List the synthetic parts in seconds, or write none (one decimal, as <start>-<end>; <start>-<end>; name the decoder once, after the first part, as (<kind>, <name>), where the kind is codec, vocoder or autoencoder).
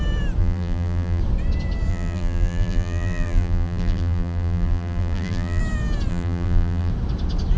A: 0.4-1.2 (vocoder, BigVGAN v2); 1.9-5.6; 6.1-6.9